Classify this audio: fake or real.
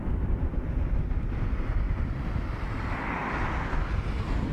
real